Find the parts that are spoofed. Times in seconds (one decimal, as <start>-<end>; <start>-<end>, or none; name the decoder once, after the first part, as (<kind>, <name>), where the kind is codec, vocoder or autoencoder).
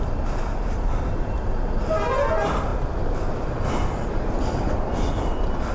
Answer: none